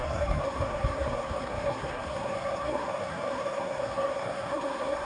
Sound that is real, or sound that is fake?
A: fake